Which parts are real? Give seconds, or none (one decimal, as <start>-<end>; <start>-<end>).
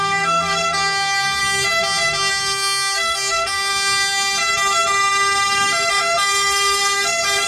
1.4-2.3; 3.7-5.9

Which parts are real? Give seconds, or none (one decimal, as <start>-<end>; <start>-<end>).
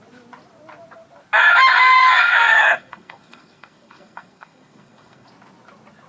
0.0-1.7; 5.3-6.1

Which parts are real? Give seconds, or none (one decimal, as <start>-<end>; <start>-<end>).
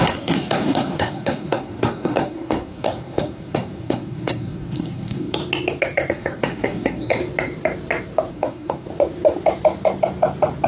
5.4-6.1; 7.2-8.3; 8.9-10.7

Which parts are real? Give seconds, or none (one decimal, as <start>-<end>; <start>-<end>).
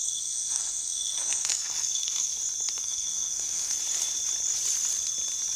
2.3-2.8; 3.8-5.6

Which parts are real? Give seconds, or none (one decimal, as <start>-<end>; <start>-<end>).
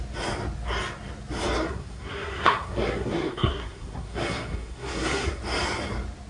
0.0-1.6; 5.4-6.3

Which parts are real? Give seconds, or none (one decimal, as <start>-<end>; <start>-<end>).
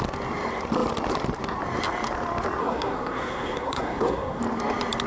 0.0-2.6; 4.4-5.1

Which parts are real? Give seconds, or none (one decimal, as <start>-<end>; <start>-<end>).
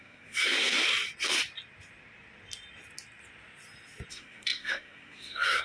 0.7-4.1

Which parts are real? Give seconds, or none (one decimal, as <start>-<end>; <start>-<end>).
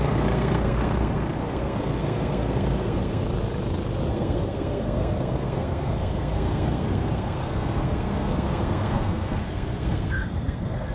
3.2-4.1